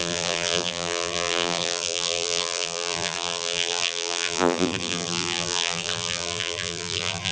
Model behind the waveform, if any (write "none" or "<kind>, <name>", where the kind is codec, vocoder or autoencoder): vocoder, BigVGAN v2